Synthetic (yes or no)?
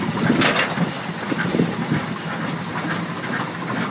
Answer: no